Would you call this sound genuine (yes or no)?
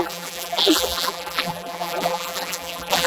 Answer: no